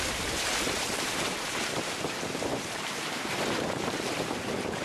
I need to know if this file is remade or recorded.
remade